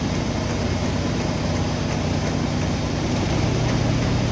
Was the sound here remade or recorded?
recorded